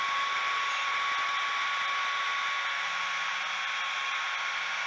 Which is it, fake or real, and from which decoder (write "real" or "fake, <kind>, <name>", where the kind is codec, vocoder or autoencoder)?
real